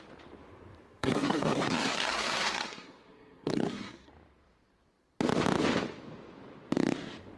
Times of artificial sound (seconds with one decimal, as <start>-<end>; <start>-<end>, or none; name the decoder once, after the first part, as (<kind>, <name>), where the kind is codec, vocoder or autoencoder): 1.0-4.1 (codec, SNAC)